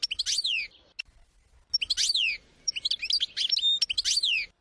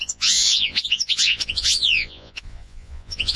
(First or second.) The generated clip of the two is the second